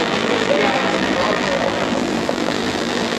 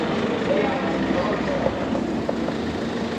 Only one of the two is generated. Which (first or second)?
first